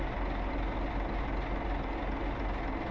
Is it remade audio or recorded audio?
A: recorded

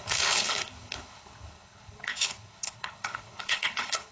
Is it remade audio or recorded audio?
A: remade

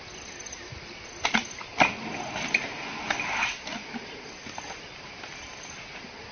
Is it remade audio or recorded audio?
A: recorded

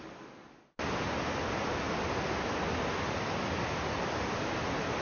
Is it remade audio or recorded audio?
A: recorded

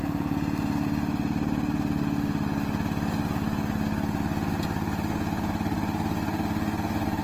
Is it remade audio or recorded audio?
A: recorded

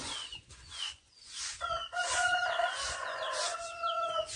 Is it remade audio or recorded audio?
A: remade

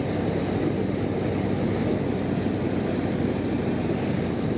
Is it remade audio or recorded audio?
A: recorded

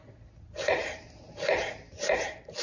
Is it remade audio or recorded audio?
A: recorded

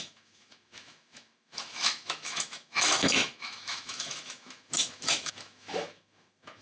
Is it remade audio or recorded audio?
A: remade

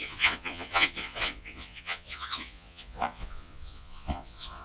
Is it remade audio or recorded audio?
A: remade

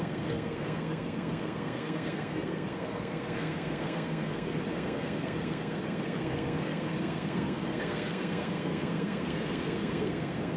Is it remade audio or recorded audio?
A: remade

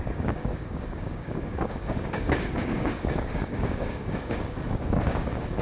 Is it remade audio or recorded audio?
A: remade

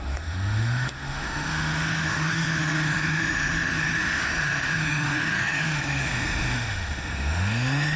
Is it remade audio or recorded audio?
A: remade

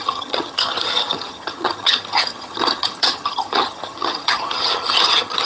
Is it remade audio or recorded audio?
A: remade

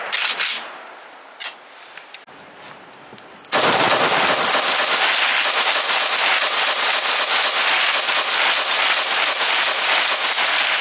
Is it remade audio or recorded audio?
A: recorded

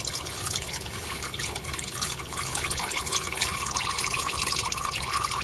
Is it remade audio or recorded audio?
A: remade